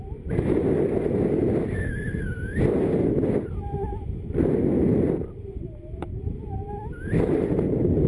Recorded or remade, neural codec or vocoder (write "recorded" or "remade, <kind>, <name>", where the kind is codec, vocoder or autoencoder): recorded